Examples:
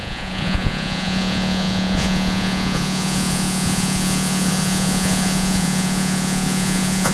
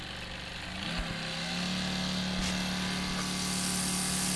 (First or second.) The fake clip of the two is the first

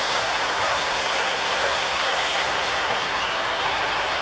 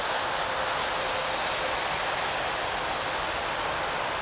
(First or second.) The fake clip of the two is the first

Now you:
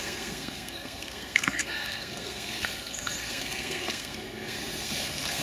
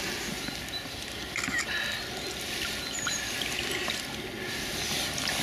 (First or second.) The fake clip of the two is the first